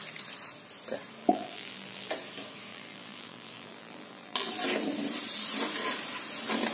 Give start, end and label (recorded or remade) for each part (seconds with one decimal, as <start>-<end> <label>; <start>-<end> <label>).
0.0-1.2 recorded; 1.2-2.1 remade; 2.1-2.7 recorded; 2.7-4.5 remade; 4.5-6.7 recorded